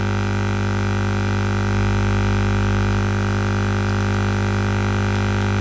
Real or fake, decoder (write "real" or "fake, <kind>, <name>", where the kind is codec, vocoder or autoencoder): real